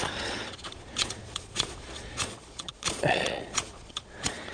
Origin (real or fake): fake